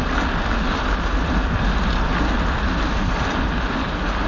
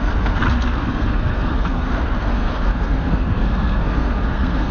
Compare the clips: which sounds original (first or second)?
first